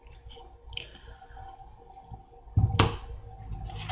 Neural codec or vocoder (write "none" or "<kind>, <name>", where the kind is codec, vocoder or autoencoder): none